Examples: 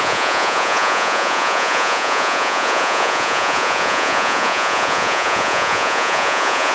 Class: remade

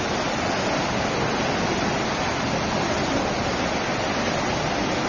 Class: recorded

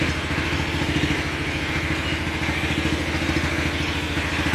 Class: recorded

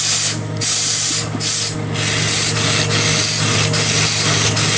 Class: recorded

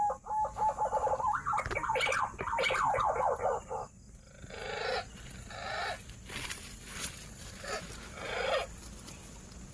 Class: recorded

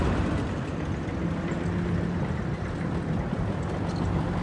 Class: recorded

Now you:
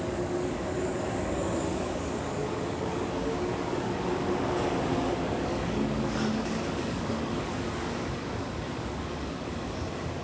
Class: remade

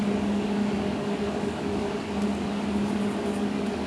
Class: remade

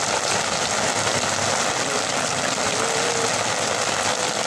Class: recorded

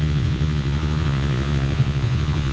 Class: remade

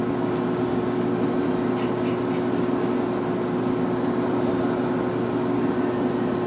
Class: recorded